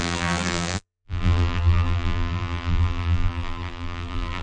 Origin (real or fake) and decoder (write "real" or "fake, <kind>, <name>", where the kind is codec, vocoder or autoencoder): fake, vocoder, BigVGAN v2